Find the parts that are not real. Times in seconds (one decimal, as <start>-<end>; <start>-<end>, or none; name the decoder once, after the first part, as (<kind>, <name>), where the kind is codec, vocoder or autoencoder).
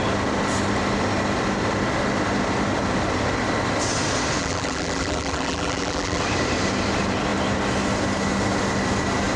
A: 4.4-6.2 (vocoder, BigVGAN v2)